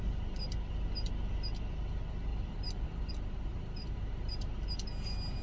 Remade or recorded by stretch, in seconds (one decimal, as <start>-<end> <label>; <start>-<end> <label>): 0.0-2.3 recorded; 2.3-3.1 remade; 3.1-3.5 recorded; 3.5-4.5 remade; 4.5-5.4 recorded